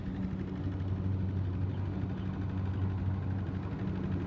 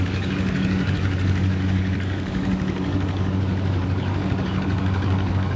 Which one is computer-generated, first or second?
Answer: second